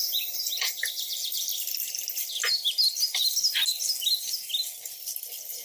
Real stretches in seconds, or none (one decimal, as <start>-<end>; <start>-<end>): 0.8-5.6